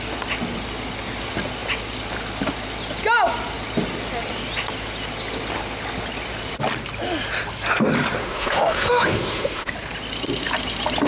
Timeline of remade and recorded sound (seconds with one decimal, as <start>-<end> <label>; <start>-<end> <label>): 0.0-8.2 recorded; 8.2-9.7 remade; 9.7-11.1 recorded